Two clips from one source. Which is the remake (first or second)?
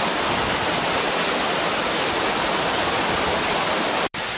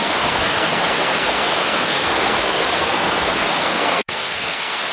second